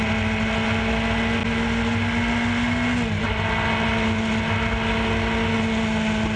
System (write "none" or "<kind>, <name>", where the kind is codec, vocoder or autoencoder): none